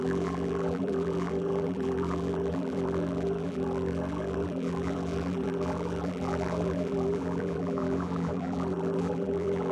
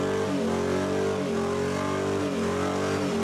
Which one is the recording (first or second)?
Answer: second